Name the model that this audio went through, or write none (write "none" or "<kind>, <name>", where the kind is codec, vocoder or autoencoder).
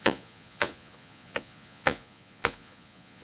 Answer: vocoder, Vocos